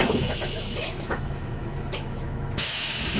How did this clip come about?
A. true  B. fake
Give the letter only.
B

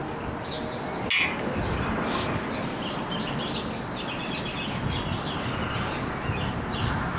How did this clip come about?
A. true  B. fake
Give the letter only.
A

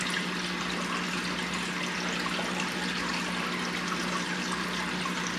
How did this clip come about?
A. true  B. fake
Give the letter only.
A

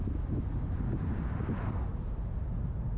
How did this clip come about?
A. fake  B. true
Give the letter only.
B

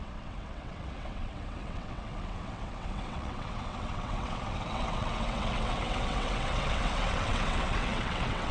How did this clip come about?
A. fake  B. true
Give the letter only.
A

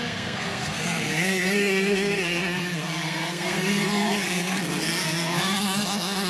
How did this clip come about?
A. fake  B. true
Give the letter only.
A